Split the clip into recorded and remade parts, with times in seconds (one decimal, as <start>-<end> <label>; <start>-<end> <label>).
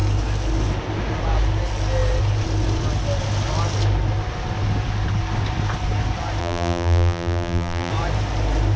0.0-6.4 recorded; 6.4-7.9 remade; 7.9-8.8 recorded